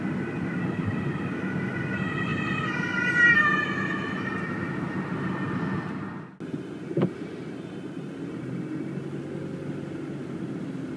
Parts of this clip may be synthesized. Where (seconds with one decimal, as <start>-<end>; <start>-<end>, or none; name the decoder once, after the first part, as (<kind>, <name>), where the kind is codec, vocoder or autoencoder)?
none

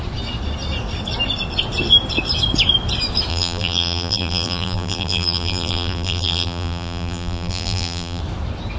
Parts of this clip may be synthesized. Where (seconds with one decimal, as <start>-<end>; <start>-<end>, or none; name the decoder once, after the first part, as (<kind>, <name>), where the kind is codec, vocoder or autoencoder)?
3.3-8.2 (vocoder, BigVGAN v2)

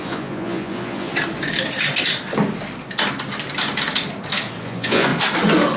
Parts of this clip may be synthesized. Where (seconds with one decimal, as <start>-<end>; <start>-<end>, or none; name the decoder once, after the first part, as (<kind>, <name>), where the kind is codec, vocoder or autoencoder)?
0.0-1.1 (vocoder, Vocos); 4.6-5.1

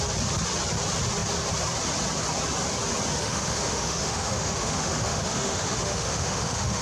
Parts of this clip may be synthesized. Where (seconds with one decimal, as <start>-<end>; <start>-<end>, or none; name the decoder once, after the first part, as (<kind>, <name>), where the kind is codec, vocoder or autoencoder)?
3.2-6.8 (autoencoder, DAC-VAE)

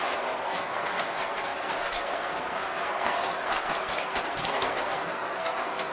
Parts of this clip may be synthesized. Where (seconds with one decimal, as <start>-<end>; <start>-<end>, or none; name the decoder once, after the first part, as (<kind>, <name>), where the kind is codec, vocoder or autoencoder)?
0.0-5.9 (codec, SNAC)

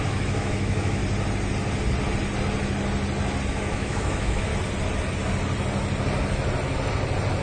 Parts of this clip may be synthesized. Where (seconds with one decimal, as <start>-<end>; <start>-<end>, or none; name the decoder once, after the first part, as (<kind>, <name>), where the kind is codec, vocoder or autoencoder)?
0.0-1.0 (autoencoder, DAC-VAE); 3.5-4.5

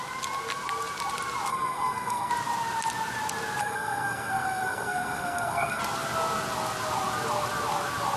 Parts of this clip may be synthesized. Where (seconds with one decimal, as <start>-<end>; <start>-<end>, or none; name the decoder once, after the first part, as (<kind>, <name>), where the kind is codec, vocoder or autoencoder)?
1.5-2.3 (codec, SNAC); 3.6-5.8